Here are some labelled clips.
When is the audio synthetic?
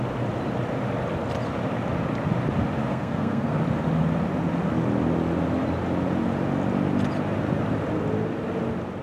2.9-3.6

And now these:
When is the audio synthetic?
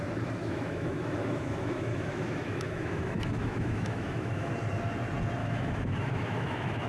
0.4-4.5; 5.4-6.9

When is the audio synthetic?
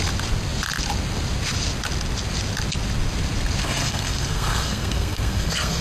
3.6-5.8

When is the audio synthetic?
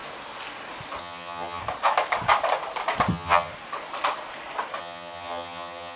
1.0-1.6; 3.1-3.5; 4.8-6.0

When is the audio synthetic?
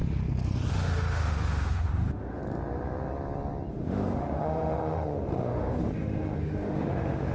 0.7-2.4; 3.7-7.3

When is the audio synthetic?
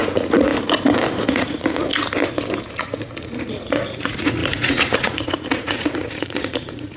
0.0-0.5; 1.2-1.9; 2.6-7.0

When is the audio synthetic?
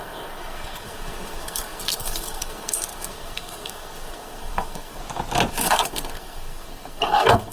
0.0-5.0; 5.5-7.5